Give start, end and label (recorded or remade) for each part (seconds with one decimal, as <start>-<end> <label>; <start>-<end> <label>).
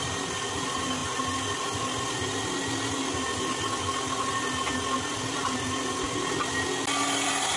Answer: 0.0-7.6 recorded